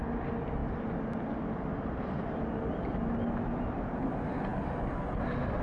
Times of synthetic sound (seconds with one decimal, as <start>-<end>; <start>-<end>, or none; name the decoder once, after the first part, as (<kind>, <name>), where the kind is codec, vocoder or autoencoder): none